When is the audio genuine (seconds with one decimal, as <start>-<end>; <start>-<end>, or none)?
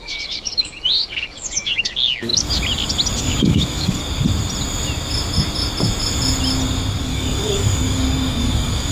2.3-3.2; 4.0-7.0